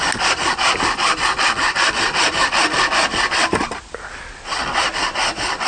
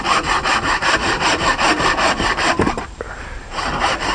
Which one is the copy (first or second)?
second